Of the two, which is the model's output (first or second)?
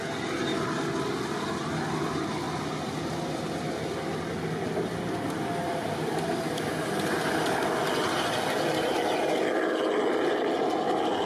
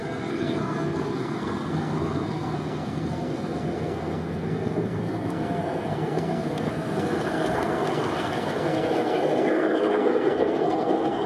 second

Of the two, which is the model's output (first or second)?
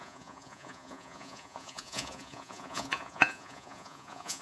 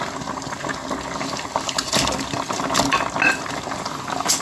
first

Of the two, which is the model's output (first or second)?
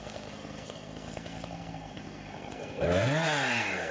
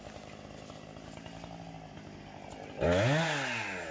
first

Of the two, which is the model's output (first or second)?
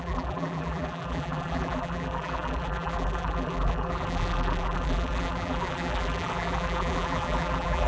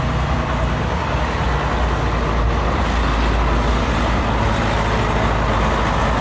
first